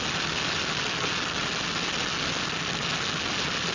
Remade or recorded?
recorded